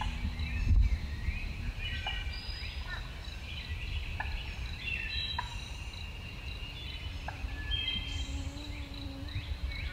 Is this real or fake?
real